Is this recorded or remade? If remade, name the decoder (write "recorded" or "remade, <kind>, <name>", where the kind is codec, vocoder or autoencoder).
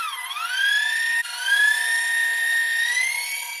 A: recorded